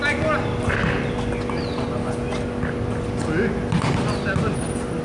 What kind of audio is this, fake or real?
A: real